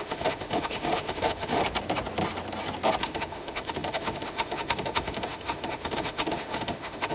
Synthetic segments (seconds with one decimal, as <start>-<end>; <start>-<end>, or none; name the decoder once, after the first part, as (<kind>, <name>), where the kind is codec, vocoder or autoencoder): 0.0-1.6 (autoencoder, DAC-VAE); 3.0-7.1